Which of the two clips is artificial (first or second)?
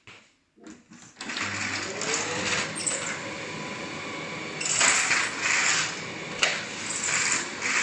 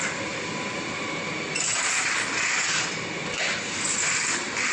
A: second